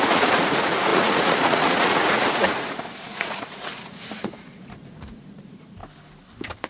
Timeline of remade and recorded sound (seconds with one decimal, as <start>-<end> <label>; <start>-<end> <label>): 0.0-5.8 remade; 5.8-6.7 recorded